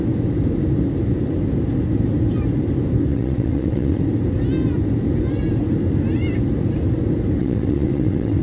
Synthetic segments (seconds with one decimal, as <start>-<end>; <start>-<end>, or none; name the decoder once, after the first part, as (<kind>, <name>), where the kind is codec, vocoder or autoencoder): 3.1-4.0 (vocoder, WaveNeXt); 7.4-8.4